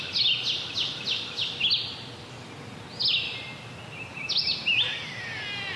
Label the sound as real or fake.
real